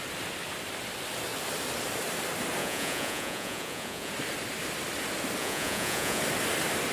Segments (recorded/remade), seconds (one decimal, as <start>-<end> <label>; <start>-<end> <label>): 0.0-2.6 recorded; 2.6-4.1 remade; 4.1-5.4 recorded; 5.4-6.2 remade; 6.2-6.9 recorded